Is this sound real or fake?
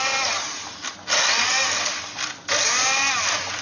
real